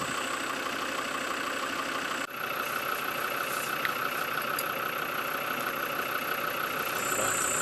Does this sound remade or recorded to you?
recorded